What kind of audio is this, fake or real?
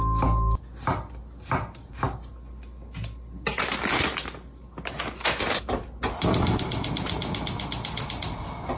real